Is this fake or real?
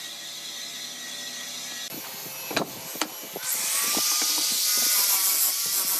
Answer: real